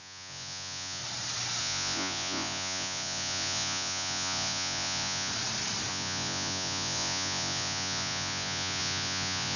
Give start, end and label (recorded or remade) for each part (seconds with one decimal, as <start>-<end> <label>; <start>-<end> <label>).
0.0-1.0 remade; 1.0-1.6 recorded; 1.6-5.3 remade; 5.3-5.9 recorded; 5.9-9.6 remade